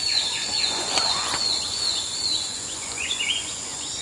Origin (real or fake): fake